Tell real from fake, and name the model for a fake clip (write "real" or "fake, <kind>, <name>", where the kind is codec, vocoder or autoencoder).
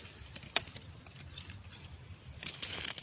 real